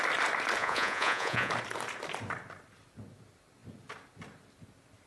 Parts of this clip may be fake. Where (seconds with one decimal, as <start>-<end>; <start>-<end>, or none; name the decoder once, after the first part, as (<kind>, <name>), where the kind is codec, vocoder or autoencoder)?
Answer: 0.6-1.5 (vocoder, Vocos)